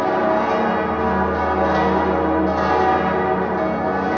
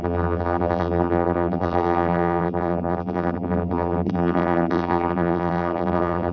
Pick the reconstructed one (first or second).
second